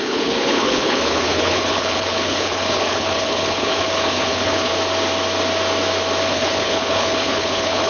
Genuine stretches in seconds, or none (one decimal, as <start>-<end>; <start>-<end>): 4.7-6.3